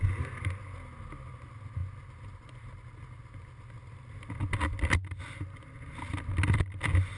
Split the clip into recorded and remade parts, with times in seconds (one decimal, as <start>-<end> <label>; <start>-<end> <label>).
0.0-7.2 recorded